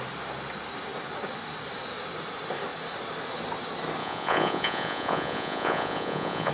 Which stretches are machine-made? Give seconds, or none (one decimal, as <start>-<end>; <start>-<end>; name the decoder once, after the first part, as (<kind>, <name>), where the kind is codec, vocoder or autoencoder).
4.0-6.5 (vocoder, Vocos)